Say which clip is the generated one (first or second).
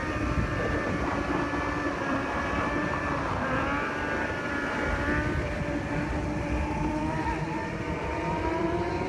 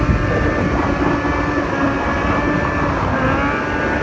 first